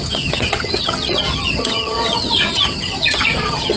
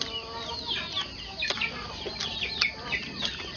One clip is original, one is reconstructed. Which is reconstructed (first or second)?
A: first